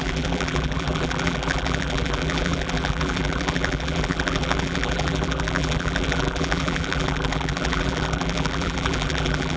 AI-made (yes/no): yes